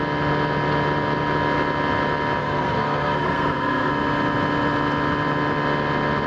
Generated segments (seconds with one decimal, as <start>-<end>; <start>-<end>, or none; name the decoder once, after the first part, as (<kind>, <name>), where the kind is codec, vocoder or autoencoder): 2.4-3.9 (codec, SNAC)